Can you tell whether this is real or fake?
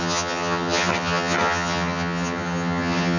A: fake